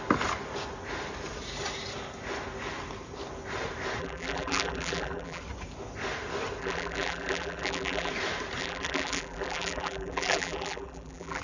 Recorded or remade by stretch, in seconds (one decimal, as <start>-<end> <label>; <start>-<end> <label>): 0.0-4.0 recorded; 4.0-5.4 remade; 5.4-6.6 recorded; 6.6-8.1 remade; 8.1-8.6 recorded; 8.6-11.4 remade